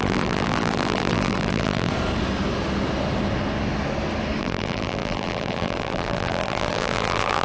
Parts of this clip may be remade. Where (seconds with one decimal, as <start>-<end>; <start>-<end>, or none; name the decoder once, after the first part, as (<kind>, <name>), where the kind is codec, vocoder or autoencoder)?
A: 0.0-1.9 (vocoder, BigVGAN v2); 4.4-7.4